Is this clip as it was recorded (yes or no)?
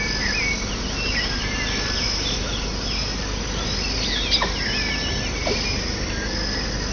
yes